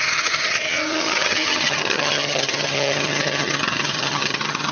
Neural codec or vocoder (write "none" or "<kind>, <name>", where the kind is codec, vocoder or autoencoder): vocoder, HiFi-GAN